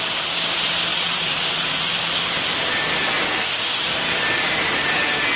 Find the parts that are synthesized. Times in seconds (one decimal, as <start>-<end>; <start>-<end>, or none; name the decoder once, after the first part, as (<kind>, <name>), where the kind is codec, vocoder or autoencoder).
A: 0.9-1.9 (vocoder, WaveNeXt)